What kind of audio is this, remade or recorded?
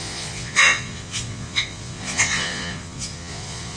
remade